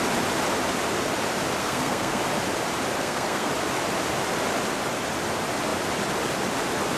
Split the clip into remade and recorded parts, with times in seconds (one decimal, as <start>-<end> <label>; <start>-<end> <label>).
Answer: 0.0-1.6 recorded; 1.6-2.2 remade; 2.2-3.0 recorded; 3.0-3.5 remade; 3.5-7.0 recorded